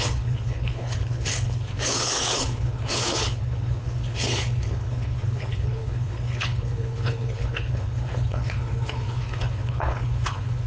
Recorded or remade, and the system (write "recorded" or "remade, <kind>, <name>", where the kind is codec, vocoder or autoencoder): remade, codec, HILCodec